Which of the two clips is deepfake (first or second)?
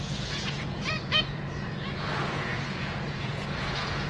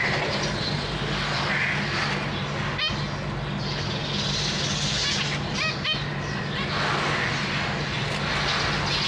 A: first